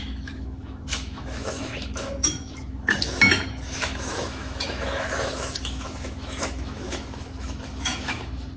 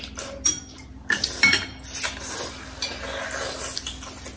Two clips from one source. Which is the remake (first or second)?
first